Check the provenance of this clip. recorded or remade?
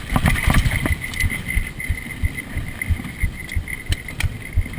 recorded